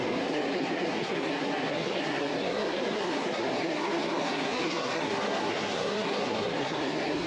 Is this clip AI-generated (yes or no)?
yes